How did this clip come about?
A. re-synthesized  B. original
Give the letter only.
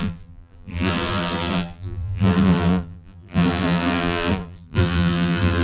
A